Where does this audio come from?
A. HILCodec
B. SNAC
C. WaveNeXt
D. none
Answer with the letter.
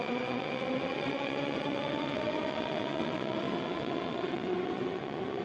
C